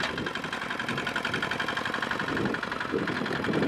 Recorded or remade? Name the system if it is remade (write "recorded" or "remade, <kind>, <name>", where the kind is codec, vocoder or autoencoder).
recorded